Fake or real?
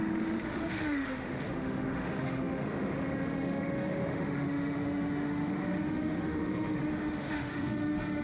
fake